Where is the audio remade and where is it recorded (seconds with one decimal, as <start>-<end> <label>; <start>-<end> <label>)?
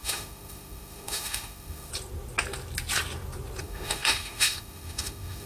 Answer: 0.0-1.9 remade; 1.9-3.6 recorded; 3.6-5.5 remade